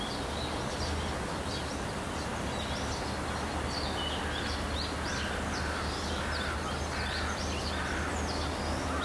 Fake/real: real